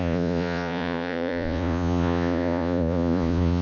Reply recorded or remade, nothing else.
remade